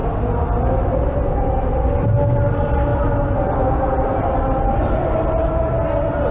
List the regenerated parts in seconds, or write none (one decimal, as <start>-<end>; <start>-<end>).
none